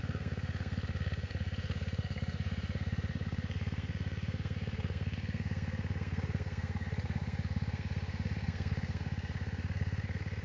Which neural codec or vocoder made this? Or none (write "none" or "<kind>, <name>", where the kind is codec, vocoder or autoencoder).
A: codec, SNAC